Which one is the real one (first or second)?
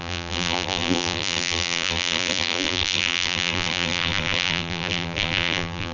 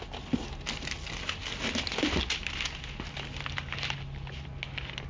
second